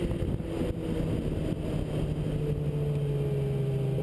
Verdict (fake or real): real